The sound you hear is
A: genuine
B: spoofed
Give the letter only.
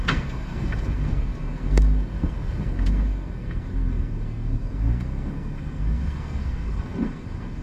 B